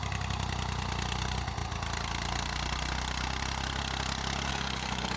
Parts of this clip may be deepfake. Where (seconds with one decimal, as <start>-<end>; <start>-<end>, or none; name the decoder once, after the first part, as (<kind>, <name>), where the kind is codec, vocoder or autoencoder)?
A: 4.5-5.2 (codec, DAC)